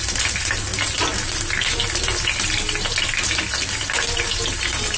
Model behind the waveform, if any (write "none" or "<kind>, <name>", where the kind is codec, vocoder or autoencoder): none